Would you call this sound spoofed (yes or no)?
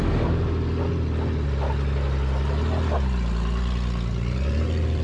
no